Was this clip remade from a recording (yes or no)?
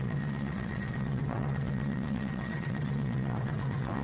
yes